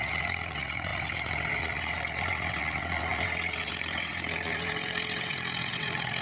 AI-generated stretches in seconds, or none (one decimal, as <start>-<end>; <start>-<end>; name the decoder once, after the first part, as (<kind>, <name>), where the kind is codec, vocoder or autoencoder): 0.0-6.2 (vocoder, WaveNeXt)